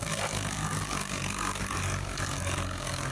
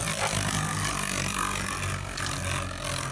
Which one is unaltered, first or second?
second